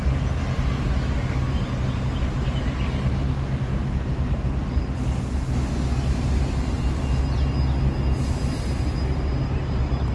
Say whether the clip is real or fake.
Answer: real